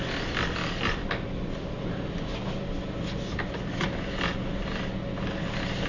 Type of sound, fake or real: real